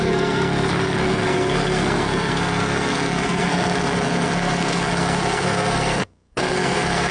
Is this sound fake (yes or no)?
yes